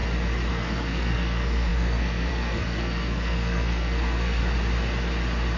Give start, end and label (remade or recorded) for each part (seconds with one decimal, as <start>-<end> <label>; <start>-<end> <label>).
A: 0.0-0.5 recorded; 0.5-4.4 remade; 4.4-5.6 recorded